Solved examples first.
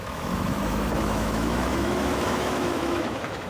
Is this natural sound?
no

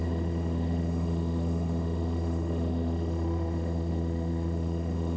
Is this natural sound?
no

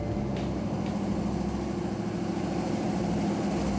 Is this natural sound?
yes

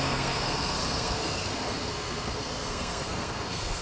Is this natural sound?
no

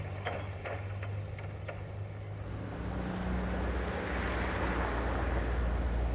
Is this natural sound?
yes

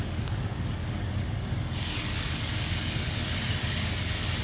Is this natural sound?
no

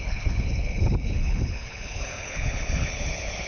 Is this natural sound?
no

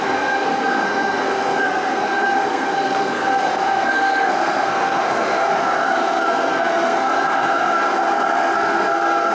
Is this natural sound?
no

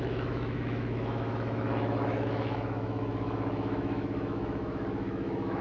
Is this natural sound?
no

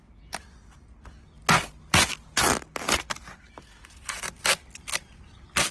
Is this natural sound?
yes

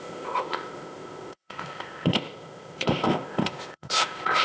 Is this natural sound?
no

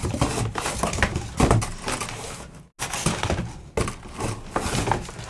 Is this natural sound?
yes